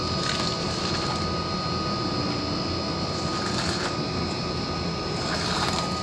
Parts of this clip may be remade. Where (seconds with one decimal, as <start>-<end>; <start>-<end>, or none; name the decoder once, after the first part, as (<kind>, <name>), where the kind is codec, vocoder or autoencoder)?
none